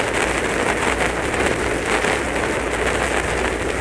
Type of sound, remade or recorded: recorded